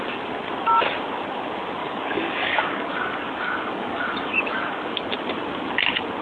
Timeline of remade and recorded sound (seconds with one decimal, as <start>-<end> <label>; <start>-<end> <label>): 0.0-1.8 recorded; 1.8-5.1 remade; 5.1-6.2 recorded